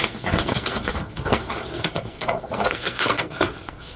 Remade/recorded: remade